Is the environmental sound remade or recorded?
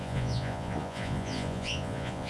remade